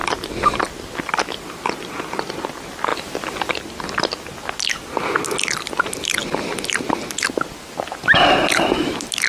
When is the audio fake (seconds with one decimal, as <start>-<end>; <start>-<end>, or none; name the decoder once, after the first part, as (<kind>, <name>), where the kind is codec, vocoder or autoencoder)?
none